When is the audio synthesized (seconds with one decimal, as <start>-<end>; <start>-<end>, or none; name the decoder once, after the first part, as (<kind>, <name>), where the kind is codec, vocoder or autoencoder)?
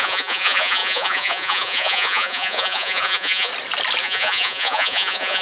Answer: 0.0-3.5 (vocoder, Vocos); 4.0-5.4